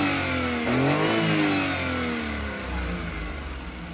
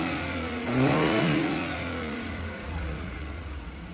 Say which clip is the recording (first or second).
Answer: first